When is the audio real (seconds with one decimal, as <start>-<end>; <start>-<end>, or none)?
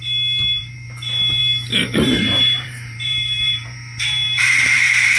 0.0-0.6; 1.4-1.8